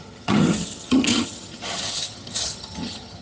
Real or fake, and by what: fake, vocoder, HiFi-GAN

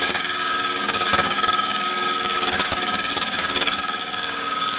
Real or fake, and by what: fake, codec, DAC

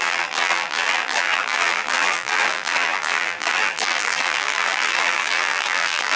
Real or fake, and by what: fake, vocoder, BigVGAN v2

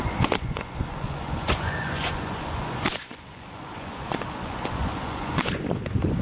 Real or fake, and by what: fake, vocoder, Vocos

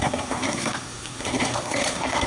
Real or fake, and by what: fake, codec, SNAC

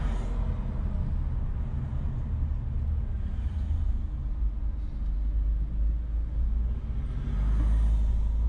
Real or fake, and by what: real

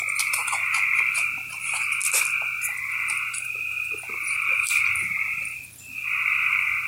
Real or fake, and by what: fake, vocoder, BigVGAN v2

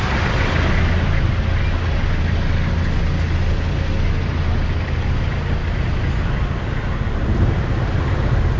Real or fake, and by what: real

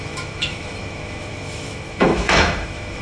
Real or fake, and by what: fake, autoencoder, DAC-VAE